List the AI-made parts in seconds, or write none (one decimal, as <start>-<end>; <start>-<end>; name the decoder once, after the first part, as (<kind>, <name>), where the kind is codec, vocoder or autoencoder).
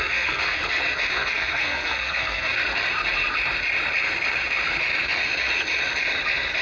0.0-0.6 (codec, SNAC); 1.1-2.6